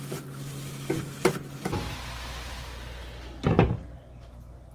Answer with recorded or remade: recorded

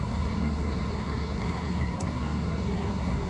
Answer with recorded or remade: remade